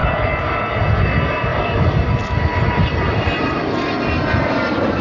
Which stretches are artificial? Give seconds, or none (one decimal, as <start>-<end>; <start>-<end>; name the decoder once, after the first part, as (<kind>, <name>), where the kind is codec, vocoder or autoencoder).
none